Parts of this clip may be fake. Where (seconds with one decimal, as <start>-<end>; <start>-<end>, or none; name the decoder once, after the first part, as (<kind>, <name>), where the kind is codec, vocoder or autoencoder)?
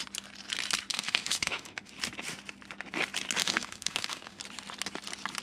0.9-1.9 (autoencoder, DAC-VAE); 3.4-4.4